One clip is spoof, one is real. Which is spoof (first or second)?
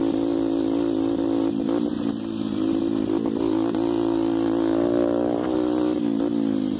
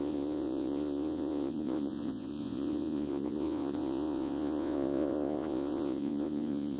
second